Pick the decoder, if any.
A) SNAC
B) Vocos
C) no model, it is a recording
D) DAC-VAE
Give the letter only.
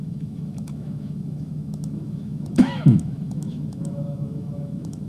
D